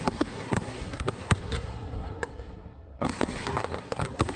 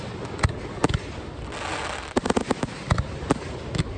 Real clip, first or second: second